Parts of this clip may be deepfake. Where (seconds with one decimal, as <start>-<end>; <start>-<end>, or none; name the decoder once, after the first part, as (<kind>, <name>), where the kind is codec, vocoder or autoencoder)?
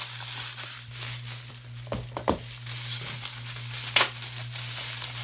none